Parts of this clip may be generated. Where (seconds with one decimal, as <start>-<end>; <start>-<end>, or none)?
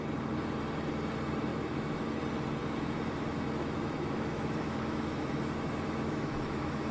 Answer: 1.5-2.2; 2.6-6.9